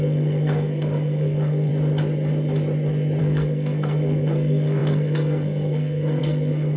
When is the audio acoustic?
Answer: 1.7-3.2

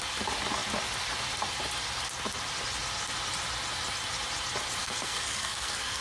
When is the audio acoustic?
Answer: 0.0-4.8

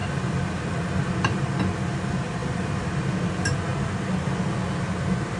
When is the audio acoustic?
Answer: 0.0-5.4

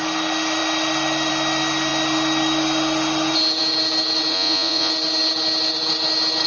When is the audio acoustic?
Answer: 0.0-4.3; 4.9-6.5

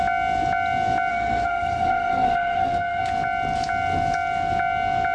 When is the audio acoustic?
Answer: 0.0-1.1; 3.0-5.1

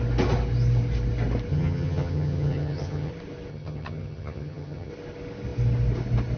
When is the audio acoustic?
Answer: 0.0-1.5; 3.1-3.5; 4.9-6.4